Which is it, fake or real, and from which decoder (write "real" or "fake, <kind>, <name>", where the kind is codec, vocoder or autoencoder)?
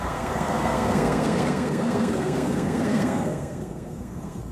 fake, codec, SNAC